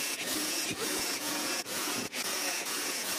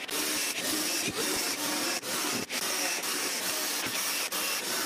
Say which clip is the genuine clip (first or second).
second